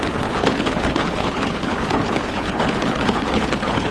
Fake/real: fake